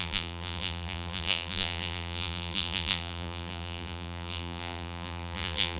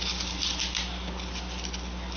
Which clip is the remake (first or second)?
first